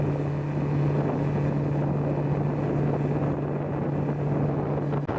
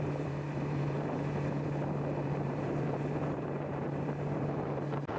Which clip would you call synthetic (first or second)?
second